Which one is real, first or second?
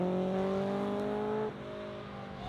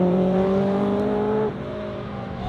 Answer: first